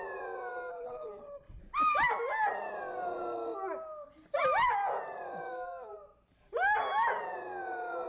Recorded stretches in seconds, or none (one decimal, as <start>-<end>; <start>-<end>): 0.0-0.7; 1.6-8.1